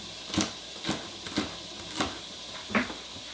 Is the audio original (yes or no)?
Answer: yes